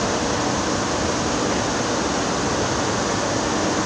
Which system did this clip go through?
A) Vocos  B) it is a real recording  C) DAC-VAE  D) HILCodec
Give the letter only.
B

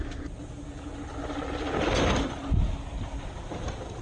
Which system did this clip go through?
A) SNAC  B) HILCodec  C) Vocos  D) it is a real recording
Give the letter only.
D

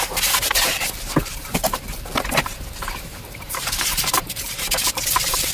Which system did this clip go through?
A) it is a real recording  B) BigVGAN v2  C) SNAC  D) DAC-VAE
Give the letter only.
B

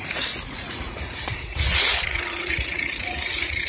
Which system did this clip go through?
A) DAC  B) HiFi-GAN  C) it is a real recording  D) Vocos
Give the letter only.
D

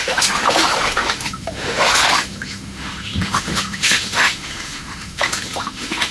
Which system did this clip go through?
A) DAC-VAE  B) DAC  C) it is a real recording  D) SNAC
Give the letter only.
A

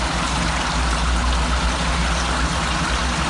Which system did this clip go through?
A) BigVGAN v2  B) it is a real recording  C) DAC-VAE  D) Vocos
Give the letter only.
B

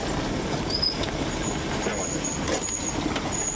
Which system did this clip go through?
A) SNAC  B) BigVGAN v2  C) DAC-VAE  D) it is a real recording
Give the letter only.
D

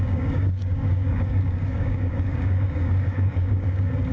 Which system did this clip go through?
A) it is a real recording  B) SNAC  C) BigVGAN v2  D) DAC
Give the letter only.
D